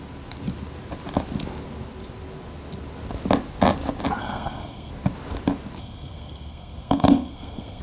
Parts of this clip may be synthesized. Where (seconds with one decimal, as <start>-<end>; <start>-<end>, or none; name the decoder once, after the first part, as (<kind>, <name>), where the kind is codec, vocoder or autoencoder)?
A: 4.2-4.9 (codec, SNAC); 5.8-7.8